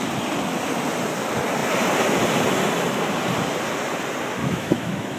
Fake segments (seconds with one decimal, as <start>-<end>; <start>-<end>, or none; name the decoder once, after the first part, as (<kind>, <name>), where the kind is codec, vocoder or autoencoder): 4.4-5.2 (autoencoder, DAC-VAE)